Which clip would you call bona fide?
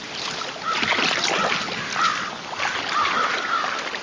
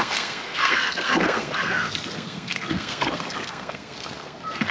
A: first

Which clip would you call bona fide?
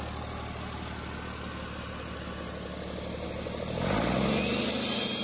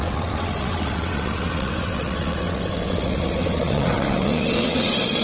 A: first